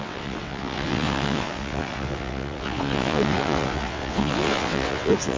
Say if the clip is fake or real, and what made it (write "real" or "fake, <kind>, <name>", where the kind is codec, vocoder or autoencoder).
fake, vocoder, WaveNeXt